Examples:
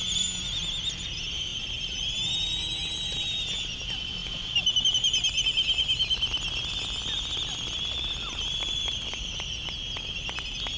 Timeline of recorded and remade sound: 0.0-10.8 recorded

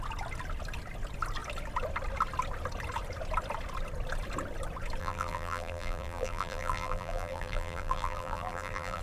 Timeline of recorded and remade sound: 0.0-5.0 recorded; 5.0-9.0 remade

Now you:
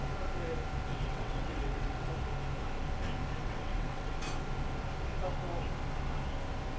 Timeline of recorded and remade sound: 0.0-0.9 recorded; 0.9-2.1 remade; 2.1-3.4 recorded; 3.4-4.1 remade; 4.1-6.8 recorded